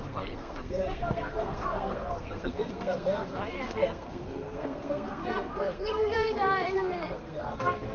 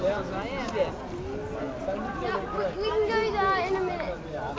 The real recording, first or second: second